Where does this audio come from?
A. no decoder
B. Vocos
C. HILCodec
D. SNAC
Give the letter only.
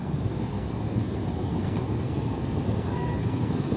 D